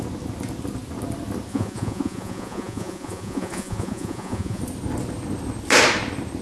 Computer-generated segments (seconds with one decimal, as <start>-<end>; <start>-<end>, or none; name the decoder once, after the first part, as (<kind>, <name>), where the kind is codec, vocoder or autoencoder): 1.5-4.6 (vocoder, Vocos)